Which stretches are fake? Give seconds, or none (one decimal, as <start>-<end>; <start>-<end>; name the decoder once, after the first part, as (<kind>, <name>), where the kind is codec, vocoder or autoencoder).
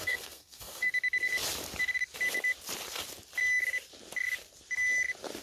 0.0-0.9 (codec, SNAC)